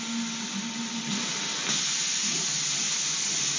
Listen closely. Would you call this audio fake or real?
real